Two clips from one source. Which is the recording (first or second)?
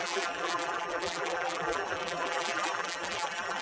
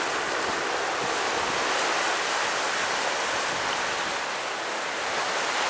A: second